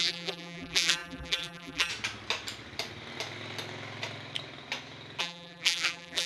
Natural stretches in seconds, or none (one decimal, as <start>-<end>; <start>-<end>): 1.9-5.2